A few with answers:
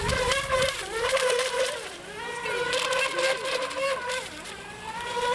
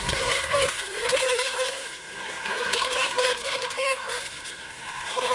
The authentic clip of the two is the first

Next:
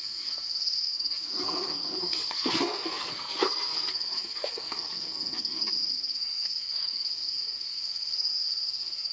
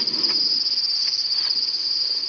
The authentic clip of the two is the second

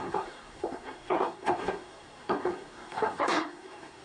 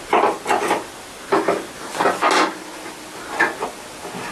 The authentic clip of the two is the second